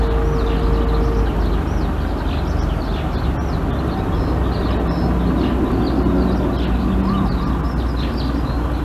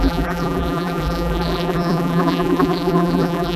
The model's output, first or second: second